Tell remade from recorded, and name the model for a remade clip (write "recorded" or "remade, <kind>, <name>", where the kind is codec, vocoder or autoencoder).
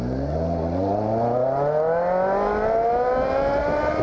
recorded